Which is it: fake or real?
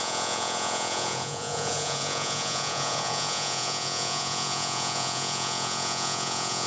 fake